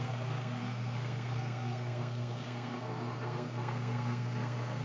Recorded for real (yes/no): no